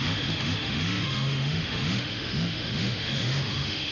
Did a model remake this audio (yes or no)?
yes